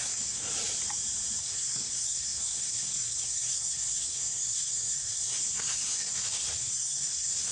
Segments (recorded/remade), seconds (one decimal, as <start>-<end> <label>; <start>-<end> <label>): 0.0-0.5 remade; 0.5-1.4 recorded; 1.4-7.5 remade